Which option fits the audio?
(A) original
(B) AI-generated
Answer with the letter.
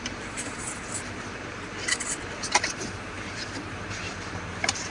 B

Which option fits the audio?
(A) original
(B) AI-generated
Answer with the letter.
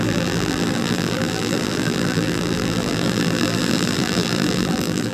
B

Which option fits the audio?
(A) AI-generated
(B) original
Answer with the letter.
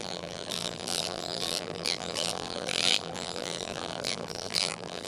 A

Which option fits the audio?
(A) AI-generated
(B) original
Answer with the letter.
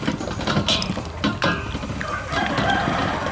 A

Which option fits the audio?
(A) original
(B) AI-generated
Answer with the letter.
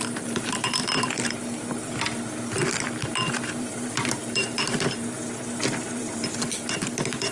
B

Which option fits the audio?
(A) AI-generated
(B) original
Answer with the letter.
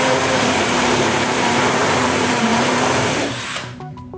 A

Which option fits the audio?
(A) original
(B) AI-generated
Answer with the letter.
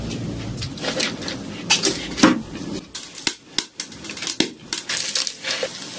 A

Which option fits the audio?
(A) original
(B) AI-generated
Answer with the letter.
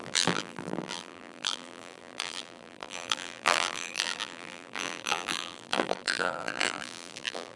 B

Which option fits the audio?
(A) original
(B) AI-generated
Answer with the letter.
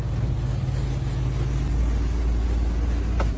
A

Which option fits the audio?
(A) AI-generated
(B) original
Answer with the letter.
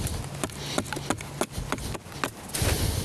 B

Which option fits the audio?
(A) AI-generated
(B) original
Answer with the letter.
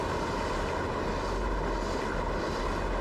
B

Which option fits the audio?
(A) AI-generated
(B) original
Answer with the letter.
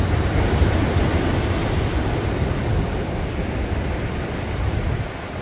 B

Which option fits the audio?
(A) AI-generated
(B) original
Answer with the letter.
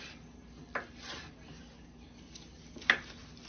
B